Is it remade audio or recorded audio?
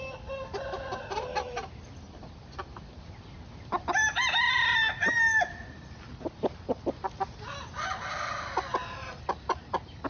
recorded